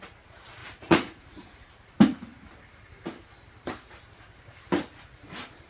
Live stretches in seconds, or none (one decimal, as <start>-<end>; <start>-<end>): 0.0-0.6; 1.6-5.7